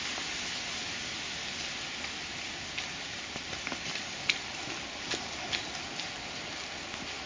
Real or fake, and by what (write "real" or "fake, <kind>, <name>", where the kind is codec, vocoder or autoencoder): real